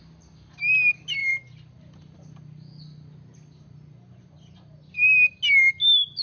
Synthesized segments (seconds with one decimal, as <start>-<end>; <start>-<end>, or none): none